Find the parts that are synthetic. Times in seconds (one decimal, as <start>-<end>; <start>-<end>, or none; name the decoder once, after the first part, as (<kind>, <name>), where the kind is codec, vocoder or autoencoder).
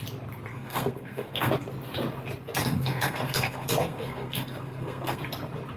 0.5-1.5 (codec, SNAC); 2.6-5.2